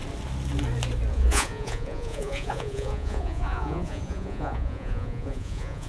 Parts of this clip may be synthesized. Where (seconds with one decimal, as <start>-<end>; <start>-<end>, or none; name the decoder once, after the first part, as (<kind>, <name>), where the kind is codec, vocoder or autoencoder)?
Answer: 1.1-5.9 (vocoder, Vocos)